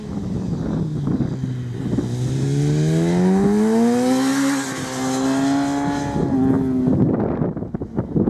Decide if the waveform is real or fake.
real